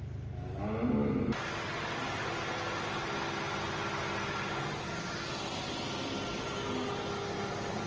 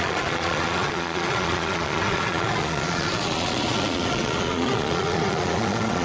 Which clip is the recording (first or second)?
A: first